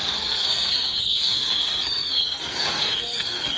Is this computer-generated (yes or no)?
yes